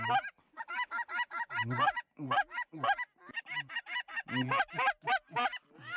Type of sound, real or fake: real